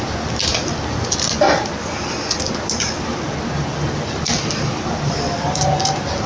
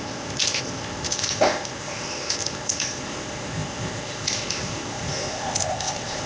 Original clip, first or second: first